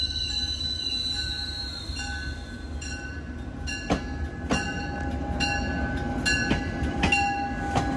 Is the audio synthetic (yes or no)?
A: no